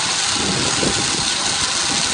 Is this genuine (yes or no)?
yes